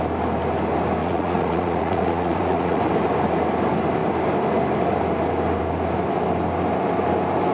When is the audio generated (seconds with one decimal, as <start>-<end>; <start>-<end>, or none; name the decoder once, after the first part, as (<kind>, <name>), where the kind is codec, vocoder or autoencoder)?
1.0-2.8 (vocoder, Vocos)